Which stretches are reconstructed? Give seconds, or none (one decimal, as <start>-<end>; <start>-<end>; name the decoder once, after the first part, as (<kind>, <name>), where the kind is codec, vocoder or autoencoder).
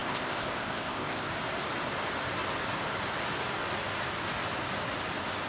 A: 0.0-1.3 (codec, ZipCodec)